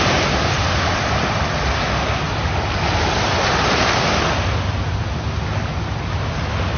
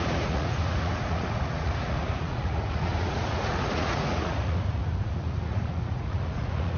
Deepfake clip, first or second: second